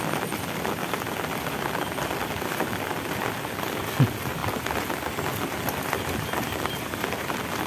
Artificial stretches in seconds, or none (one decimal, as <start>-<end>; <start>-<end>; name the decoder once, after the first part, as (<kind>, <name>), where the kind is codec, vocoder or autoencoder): none